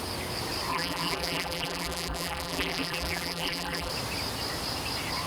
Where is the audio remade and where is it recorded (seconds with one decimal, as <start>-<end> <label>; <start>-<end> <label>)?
0.0-0.7 recorded; 0.7-3.9 remade; 3.9-5.3 recorded